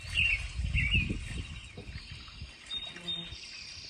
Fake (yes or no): no